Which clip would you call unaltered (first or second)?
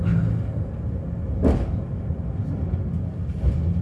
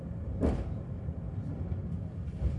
first